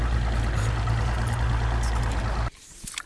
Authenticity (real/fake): real